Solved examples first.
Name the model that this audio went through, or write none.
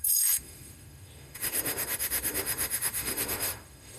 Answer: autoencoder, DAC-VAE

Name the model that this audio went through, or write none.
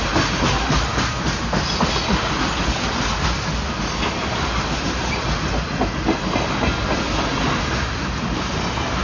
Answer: none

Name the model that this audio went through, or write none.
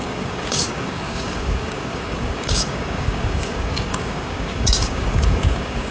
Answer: codec, DAC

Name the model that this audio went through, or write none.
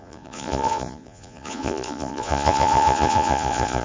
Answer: vocoder, Vocos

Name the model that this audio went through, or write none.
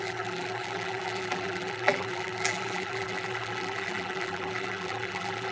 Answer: vocoder, BigVGAN v2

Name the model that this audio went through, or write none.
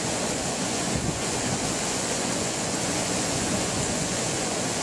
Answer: vocoder, Vocos